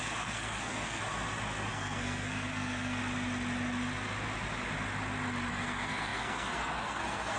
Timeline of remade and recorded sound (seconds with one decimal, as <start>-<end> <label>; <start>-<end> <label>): 0.0-1.0 remade; 1.0-1.7 recorded; 1.7-3.0 remade; 3.0-5.5 recorded; 5.5-7.4 remade